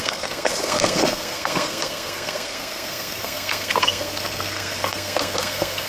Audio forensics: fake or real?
fake